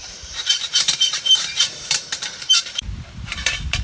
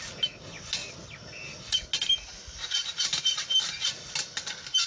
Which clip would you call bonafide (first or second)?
second